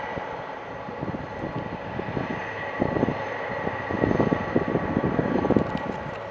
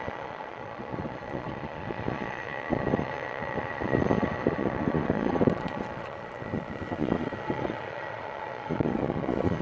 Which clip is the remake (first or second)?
second